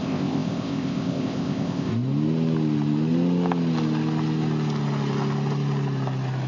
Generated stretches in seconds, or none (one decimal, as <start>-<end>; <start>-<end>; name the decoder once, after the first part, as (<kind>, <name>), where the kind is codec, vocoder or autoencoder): 0.0-1.9 (codec, ZipCodec)